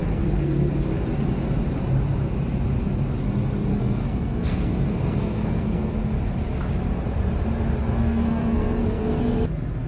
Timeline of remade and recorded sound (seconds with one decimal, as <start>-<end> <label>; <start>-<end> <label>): 0.0-0.7 remade; 0.7-3.7 recorded; 3.7-5.9 remade; 5.9-7.8 recorded; 7.8-9.2 remade; 9.2-9.9 recorded